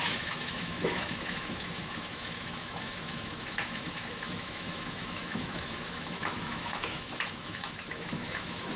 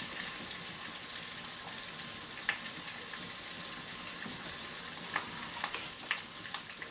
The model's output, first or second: first